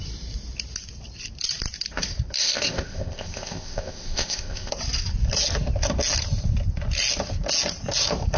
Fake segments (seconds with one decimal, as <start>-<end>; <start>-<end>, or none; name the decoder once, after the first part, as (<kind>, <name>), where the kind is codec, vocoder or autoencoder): 2.4-4.7 (codec, ZipCodec)